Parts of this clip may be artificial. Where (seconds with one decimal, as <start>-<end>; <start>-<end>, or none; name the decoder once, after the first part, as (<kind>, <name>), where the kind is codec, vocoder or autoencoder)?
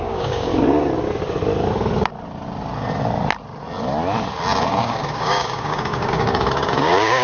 0.0-0.5 (codec, DAC); 4.8-7.2